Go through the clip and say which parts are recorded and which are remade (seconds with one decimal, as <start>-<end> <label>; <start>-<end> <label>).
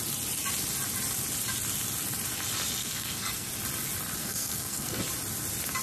0.0-2.8 recorded; 2.8-3.5 remade; 3.5-4.2 recorded; 4.2-5.0 remade; 5.0-5.8 recorded